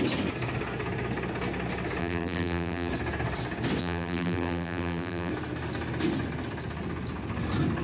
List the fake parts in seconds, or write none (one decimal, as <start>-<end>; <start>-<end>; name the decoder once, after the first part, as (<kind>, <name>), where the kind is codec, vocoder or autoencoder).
2.0-2.9 (vocoder, BigVGAN v2); 3.8-5.3